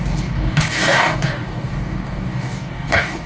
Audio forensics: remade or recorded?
remade